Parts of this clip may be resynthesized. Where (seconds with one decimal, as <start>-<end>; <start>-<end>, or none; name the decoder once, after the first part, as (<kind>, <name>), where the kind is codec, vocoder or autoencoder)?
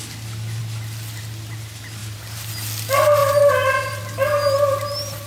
2.0-2.5 (vocoder, BigVGAN v2); 3.2-4.0